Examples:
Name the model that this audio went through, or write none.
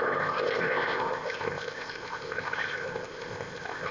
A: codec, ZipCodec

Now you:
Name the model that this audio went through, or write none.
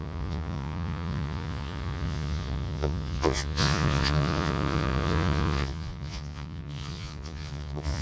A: vocoder, Vocos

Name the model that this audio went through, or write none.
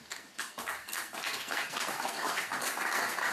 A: codec, SNAC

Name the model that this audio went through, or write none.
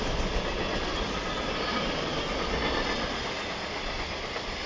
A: none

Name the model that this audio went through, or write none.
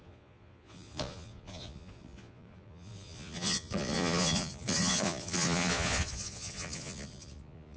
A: vocoder, Vocos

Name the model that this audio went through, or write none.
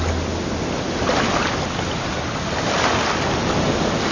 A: none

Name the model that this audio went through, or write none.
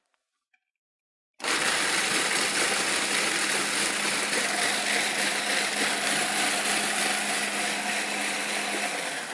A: none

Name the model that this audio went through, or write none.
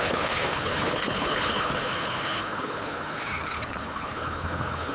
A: codec, HILCodec